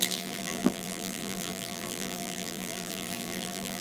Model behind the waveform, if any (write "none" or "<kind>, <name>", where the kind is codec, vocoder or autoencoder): vocoder, BigVGAN v2